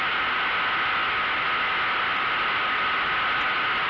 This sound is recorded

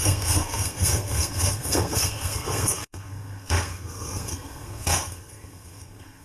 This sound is remade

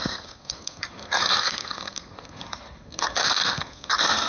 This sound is remade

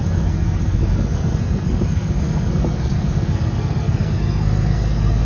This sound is remade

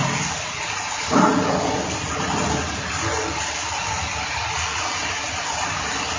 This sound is recorded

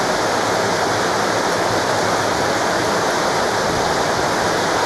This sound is recorded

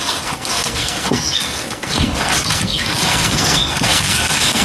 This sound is remade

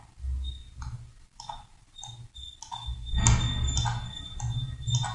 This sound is recorded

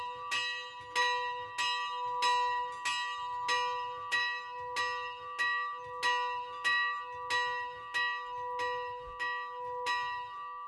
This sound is recorded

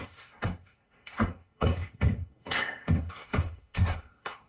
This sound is remade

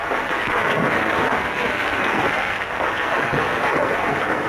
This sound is remade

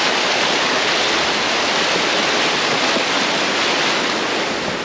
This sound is recorded